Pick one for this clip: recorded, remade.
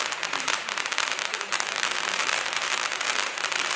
remade